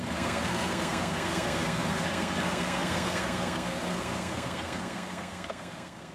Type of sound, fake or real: fake